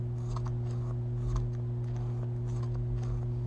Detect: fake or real real